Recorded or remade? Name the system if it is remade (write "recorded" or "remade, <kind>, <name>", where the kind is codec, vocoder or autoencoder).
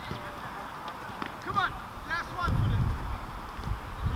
recorded